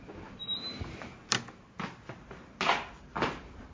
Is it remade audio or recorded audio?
recorded